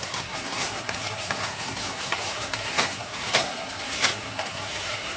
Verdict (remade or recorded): remade